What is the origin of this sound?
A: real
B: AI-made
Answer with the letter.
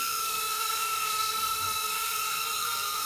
B